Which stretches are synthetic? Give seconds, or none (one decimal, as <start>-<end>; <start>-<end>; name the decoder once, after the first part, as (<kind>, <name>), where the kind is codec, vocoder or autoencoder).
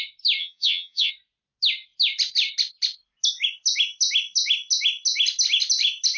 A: 0.4-1.1 (vocoder, HiFi-GAN)